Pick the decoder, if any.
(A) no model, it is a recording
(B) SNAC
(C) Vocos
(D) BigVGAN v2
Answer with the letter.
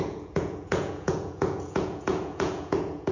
C